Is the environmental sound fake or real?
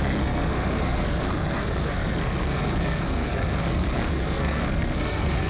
fake